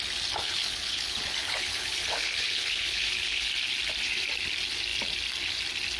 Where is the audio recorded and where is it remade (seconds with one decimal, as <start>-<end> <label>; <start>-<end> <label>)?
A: 0.0-0.4 recorded; 0.4-3.5 remade; 3.5-6.0 recorded